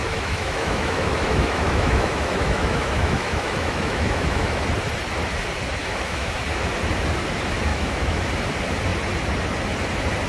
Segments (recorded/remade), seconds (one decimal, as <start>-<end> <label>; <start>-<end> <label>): 0.0-4.6 remade; 4.6-5.8 recorded; 5.8-6.4 remade; 6.4-7.7 recorded; 7.7-8.2 remade; 8.2-10.3 recorded